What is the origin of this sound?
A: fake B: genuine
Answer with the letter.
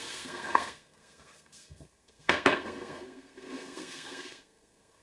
A